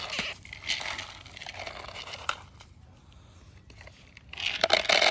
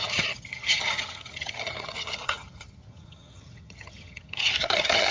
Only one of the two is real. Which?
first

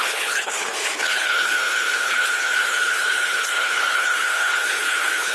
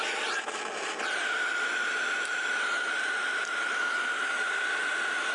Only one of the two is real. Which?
second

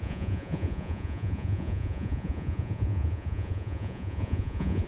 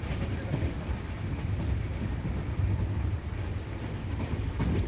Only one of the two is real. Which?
second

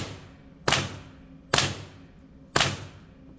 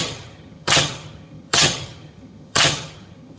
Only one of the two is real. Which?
first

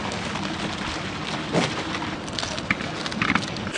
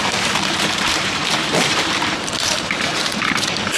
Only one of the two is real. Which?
first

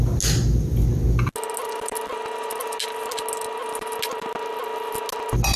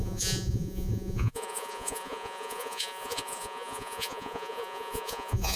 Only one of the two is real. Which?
first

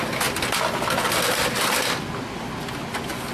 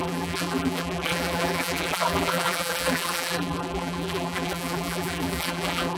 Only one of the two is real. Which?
first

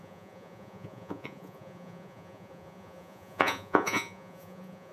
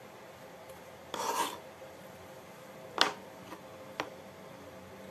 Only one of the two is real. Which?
second